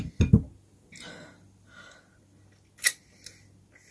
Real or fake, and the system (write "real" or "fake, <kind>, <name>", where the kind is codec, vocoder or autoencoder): real